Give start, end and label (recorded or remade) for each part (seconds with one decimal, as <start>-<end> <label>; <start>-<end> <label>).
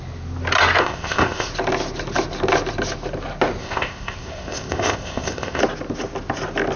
0.0-0.8 recorded; 0.8-1.5 remade; 1.5-3.6 recorded; 3.6-5.6 remade; 5.6-6.8 recorded